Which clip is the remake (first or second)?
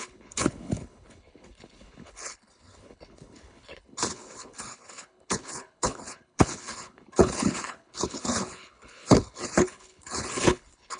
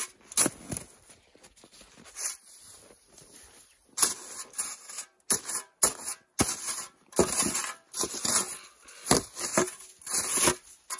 first